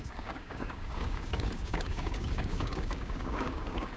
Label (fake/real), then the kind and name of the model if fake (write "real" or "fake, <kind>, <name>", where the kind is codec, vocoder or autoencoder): fake, codec, DAC